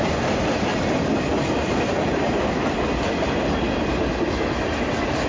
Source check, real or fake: real